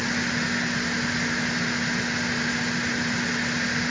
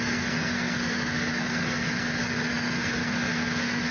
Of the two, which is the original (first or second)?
first